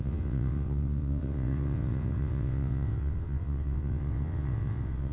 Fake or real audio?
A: fake